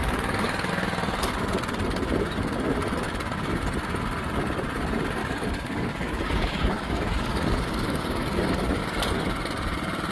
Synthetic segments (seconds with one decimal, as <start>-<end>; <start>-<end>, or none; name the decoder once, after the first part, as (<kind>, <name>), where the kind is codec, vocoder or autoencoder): 0.0-0.7 (codec, DAC); 5.2-8.8